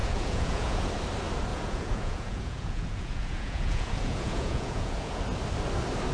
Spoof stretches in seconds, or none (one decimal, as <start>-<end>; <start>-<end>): 0.0-0.9; 1.5-5.2